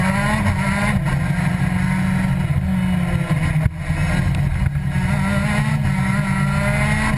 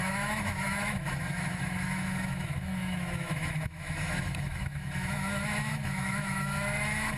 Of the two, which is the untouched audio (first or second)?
first